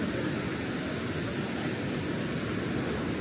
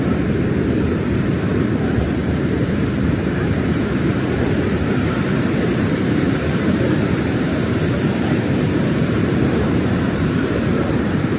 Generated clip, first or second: second